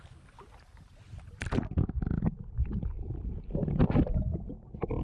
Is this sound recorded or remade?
recorded